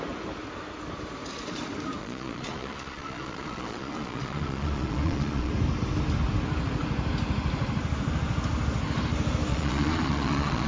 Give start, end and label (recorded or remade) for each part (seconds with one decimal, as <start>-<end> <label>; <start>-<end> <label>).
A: 0.0-2.0 recorded; 2.0-5.5 remade; 5.5-9.5 recorded; 9.5-10.7 remade